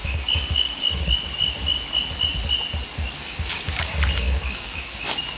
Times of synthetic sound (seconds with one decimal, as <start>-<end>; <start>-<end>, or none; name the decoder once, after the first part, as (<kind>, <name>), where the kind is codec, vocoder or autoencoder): 0.0-1.0 (codec, DAC); 3.2-5.0

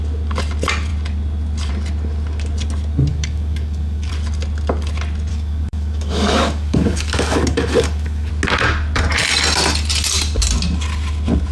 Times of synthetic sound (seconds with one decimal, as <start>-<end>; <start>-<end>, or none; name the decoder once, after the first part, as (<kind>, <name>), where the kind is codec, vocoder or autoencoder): 3.1-4.1 (codec, DAC); 5.3-8.3